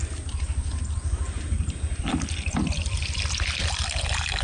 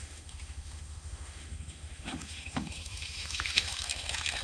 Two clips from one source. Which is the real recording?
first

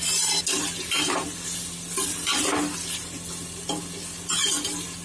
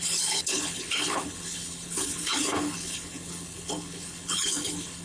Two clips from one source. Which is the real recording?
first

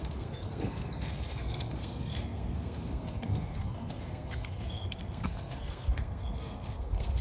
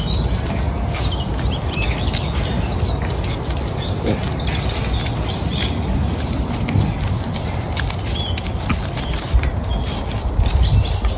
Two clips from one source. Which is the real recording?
second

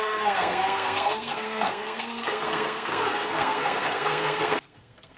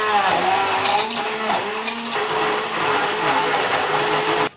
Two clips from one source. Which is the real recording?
second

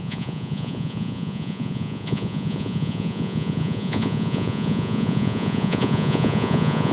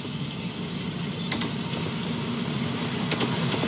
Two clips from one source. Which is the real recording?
second